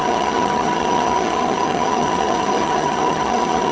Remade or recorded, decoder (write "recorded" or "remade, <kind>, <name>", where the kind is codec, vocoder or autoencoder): remade, vocoder, HiFi-GAN